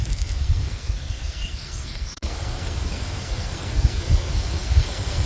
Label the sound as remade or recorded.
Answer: remade